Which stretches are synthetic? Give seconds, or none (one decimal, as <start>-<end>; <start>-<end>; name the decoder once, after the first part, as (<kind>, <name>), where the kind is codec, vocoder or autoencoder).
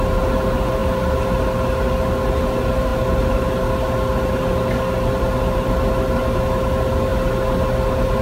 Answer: none